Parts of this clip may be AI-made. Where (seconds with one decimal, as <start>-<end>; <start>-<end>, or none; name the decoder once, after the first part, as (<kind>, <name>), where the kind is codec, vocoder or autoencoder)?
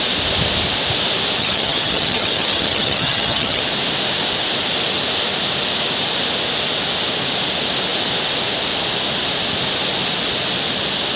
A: 1.4-3.6 (vocoder, HiFi-GAN)